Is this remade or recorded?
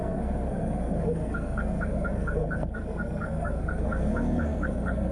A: remade